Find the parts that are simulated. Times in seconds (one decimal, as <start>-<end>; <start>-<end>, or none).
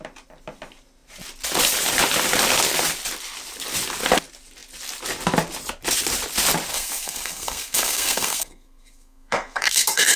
6.7-10.2